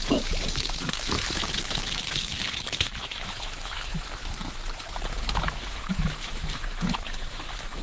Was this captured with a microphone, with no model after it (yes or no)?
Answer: no